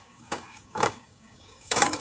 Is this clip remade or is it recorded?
remade